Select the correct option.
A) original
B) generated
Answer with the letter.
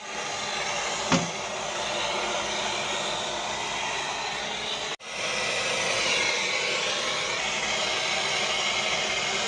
A